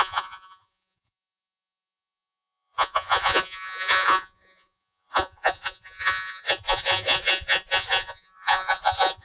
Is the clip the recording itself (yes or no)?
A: no